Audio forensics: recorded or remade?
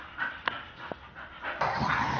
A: recorded